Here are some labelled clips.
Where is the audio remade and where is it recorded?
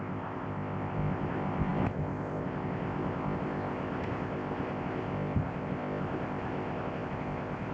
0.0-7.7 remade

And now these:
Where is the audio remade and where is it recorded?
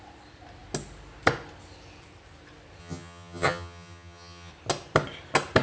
0.0-2.8 recorded; 2.8-4.5 remade; 4.5-5.6 recorded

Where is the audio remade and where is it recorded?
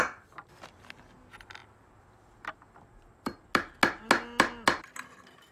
0.0-5.5 recorded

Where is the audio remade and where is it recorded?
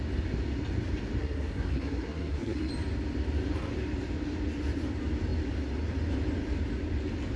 0.0-1.2 recorded; 1.2-2.7 remade; 2.7-7.4 recorded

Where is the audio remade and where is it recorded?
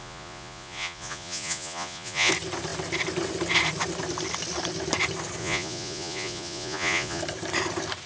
0.0-2.3 remade; 2.3-5.4 recorded; 5.4-7.2 remade; 7.2-8.1 recorded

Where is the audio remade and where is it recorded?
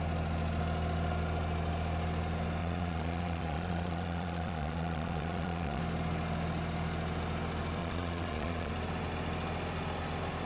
0.0-2.6 recorded; 2.6-5.8 remade; 5.8-7.8 recorded; 7.8-8.7 remade; 8.7-10.5 recorded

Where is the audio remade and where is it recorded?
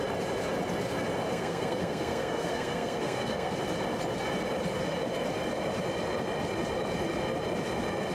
0.0-1.3 recorded; 1.3-3.5 remade; 3.5-8.1 recorded